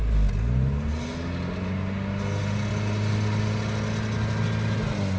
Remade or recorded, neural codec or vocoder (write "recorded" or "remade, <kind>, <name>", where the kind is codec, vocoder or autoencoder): recorded